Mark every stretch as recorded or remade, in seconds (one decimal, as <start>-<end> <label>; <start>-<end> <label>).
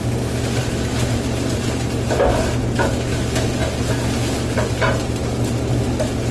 0.0-6.3 recorded